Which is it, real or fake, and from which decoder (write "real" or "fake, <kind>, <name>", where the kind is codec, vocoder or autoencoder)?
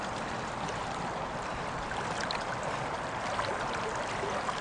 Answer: real